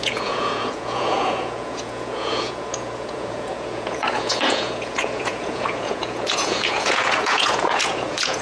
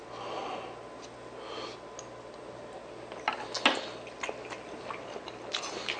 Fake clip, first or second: first